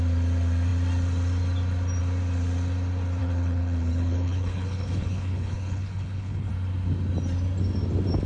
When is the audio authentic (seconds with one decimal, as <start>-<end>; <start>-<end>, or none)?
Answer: 0.0-3.2; 6.5-8.3